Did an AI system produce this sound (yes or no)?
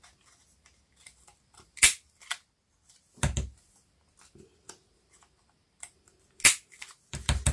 no